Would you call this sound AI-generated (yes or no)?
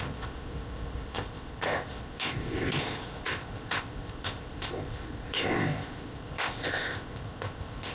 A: yes